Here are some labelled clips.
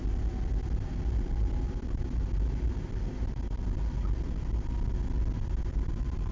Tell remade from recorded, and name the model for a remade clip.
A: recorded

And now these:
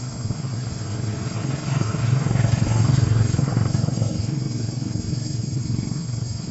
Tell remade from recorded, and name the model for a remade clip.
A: remade, codec, SNAC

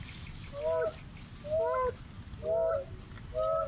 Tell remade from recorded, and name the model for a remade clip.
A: recorded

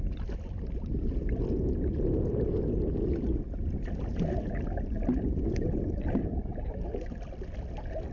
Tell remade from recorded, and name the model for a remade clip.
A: recorded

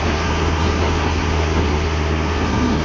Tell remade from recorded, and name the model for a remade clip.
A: remade, codec, SNAC